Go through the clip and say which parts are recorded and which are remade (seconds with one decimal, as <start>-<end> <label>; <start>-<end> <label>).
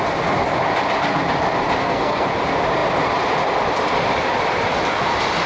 0.0-1.8 recorded; 1.8-2.3 remade; 2.3-5.5 recorded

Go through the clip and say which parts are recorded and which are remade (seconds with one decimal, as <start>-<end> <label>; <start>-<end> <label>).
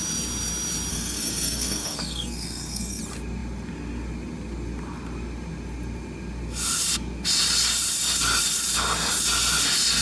0.0-0.9 recorded; 0.9-3.0 remade; 3.0-10.0 recorded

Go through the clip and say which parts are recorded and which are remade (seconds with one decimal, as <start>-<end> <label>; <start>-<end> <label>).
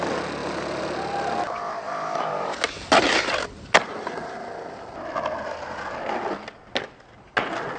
0.0-7.8 recorded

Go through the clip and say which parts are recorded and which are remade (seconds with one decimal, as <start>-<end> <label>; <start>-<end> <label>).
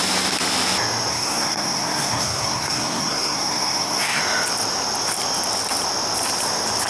0.0-1.1 recorded; 1.1-4.2 remade; 4.2-6.9 recorded